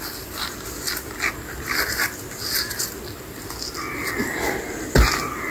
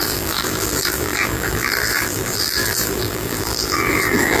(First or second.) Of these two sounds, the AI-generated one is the second